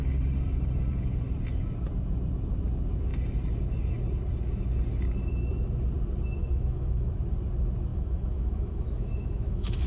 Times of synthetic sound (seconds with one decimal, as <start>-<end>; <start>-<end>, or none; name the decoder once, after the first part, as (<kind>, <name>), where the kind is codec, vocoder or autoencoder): 6.4-7.1 (autoencoder, DAC-VAE); 7.9-9.9